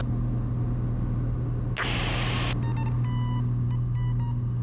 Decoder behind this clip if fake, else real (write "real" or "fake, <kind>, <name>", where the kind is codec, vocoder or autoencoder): real